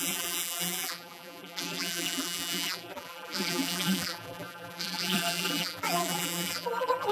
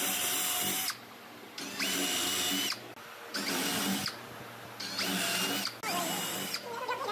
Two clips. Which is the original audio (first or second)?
second